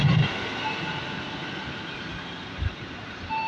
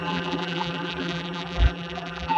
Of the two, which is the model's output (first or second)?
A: second